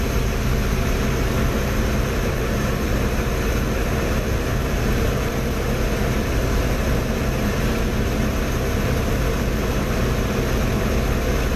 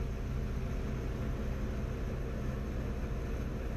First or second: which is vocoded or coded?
first